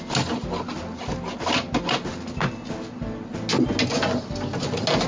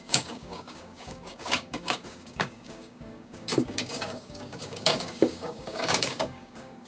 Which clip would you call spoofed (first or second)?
second